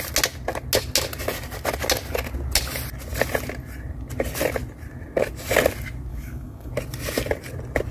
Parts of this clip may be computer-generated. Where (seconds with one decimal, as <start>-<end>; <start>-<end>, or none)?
6.1-6.7